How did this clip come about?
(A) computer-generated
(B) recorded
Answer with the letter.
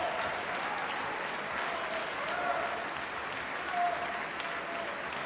B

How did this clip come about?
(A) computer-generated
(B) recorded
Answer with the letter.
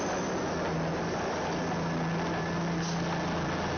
B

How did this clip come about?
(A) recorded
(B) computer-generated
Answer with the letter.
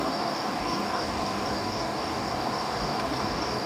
B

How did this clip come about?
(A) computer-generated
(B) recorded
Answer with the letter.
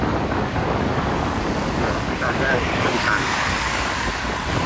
A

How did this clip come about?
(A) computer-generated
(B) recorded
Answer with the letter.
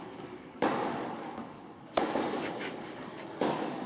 A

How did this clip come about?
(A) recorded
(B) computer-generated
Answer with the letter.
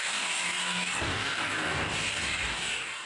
B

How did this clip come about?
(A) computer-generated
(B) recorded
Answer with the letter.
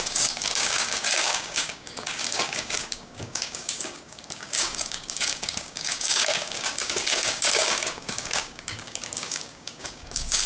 A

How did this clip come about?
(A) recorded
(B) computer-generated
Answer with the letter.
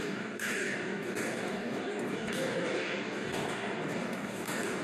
B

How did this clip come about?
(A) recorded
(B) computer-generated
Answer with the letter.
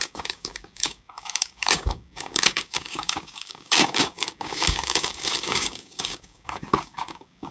B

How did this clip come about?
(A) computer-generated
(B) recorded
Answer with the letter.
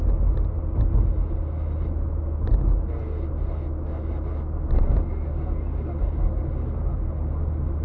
B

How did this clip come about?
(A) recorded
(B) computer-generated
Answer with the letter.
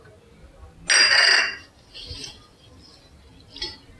A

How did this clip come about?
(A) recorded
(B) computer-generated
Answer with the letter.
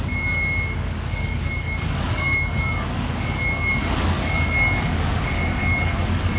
B